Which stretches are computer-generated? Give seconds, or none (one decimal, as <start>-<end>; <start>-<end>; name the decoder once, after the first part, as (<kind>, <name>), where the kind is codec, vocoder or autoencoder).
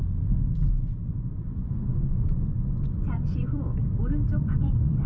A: 1.2-3.8 (vocoder, Vocos); 4.4-5.1